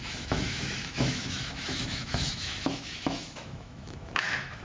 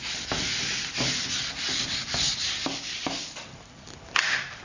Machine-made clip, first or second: first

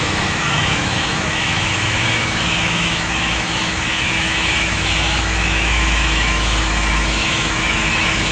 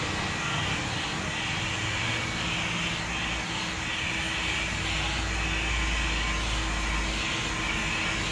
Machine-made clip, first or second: first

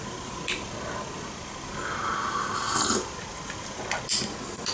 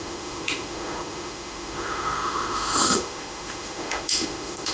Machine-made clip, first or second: second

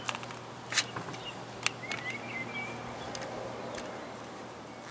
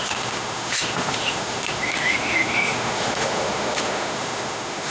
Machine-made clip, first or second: second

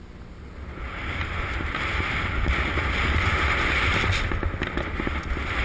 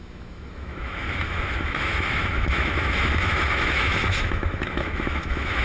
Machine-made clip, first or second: second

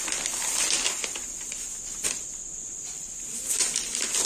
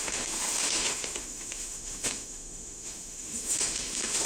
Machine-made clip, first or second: second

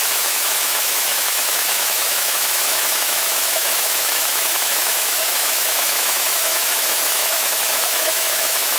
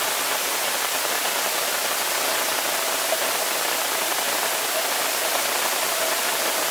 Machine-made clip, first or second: first